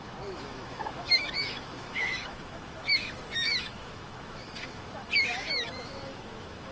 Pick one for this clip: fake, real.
fake